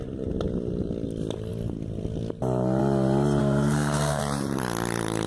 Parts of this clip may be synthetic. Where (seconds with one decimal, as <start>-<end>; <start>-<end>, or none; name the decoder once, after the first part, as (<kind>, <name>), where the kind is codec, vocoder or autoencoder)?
3.4-4.2 (codec, SNAC)